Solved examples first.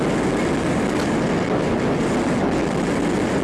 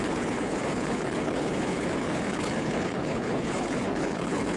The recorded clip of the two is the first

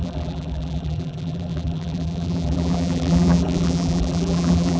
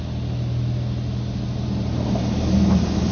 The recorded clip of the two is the second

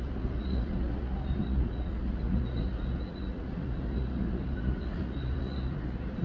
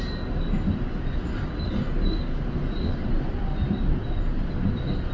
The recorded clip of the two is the second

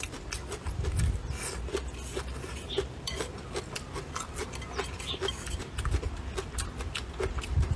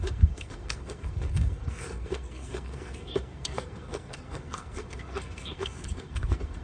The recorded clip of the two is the first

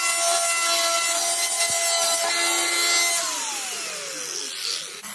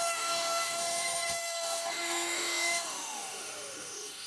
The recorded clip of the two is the first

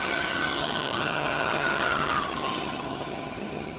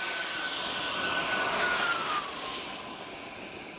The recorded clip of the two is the second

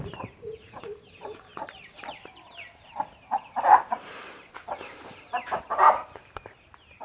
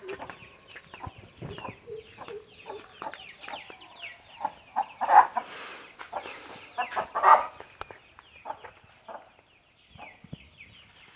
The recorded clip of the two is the second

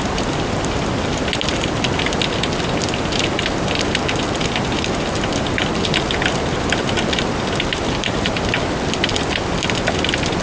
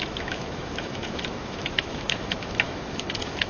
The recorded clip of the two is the first